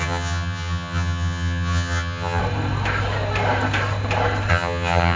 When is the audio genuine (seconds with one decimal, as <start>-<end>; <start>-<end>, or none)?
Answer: 2.4-4.5